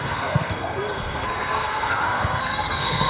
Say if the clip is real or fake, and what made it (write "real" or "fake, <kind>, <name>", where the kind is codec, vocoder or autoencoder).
fake, codec, SNAC